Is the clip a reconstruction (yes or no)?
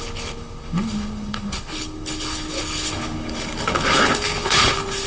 yes